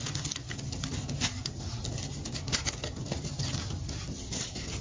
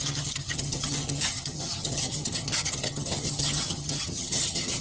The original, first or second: first